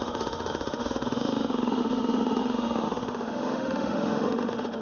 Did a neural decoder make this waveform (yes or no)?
yes